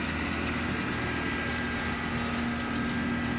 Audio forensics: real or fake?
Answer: real